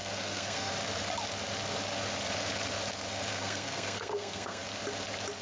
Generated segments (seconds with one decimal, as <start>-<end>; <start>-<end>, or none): 0.0-0.7; 3.3-4.6